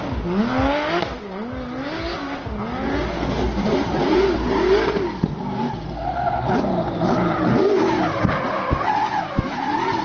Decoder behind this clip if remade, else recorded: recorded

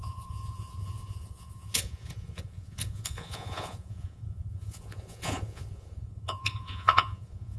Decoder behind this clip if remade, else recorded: remade, vocoder, Vocos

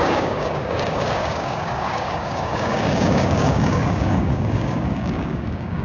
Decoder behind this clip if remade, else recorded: remade, codec, DAC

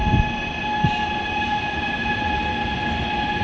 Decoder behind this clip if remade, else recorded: recorded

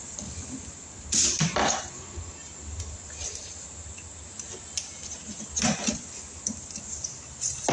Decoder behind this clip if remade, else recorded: recorded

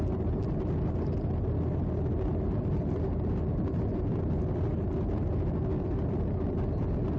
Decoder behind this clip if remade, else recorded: recorded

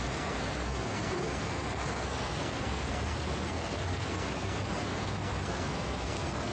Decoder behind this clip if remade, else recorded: remade, codec, SNAC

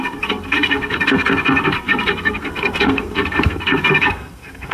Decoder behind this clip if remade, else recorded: remade, codec, SNAC